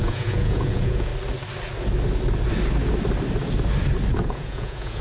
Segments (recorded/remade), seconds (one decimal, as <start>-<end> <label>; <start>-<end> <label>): 0.0-1.1 remade; 1.1-4.1 recorded; 4.1-5.0 remade